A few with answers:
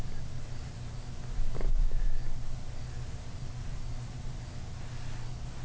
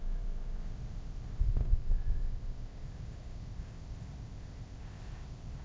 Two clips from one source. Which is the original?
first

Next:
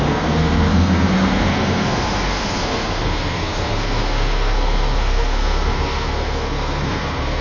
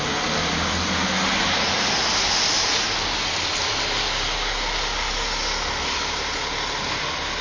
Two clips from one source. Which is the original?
second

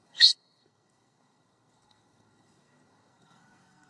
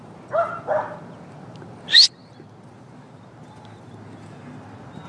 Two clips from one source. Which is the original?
second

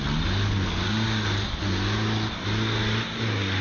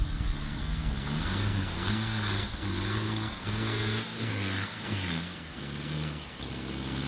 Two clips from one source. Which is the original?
first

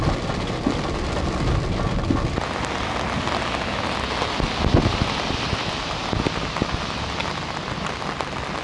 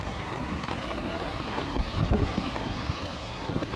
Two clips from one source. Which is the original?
first